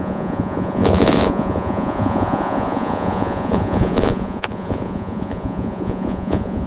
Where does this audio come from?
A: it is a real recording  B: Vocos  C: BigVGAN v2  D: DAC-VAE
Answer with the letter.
B